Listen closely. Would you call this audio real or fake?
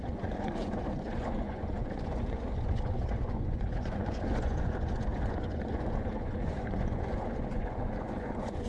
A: fake